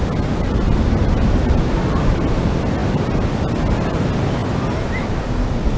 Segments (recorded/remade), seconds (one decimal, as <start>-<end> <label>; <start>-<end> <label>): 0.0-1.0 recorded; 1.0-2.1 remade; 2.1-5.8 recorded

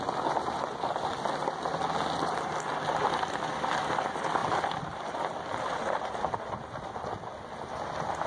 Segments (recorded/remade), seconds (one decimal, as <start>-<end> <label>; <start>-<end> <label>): 0.0-8.3 recorded

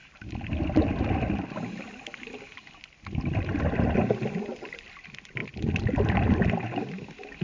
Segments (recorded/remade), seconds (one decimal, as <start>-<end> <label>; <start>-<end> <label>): 0.0-2.5 remade; 2.5-3.5 recorded; 3.5-4.1 remade; 4.1-5.4 recorded; 5.4-6.2 remade; 6.2-7.4 recorded

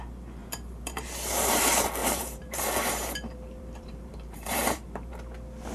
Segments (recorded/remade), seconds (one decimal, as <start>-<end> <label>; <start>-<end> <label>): 0.0-0.4 recorded; 0.4-1.6 remade; 1.6-2.0 recorded; 2.0-5.1 remade; 5.1-5.7 recorded

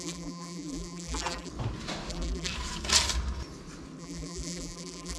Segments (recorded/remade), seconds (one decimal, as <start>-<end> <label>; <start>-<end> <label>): 0.0-1.5 remade; 1.5-2.1 recorded; 2.1-2.5 remade; 2.5-4.0 recorded; 4.0-5.2 remade

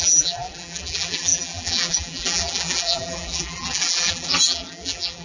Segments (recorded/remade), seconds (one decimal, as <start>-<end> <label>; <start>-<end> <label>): 0.0-5.2 remade

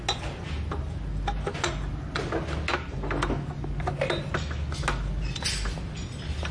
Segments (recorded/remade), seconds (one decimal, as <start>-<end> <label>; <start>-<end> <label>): 0.0-6.5 recorded

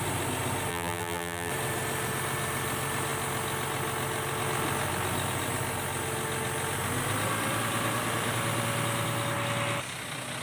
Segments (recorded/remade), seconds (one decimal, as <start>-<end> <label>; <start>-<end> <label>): 0.0-0.7 recorded; 0.7-1.5 remade; 1.5-10.4 recorded